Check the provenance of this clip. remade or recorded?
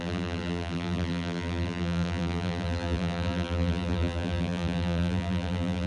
remade